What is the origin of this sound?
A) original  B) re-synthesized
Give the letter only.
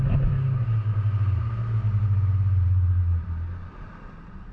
A